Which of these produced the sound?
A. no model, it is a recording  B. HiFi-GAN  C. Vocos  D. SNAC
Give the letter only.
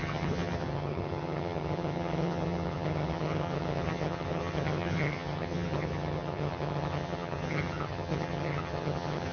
B